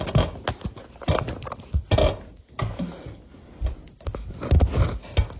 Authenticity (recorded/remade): recorded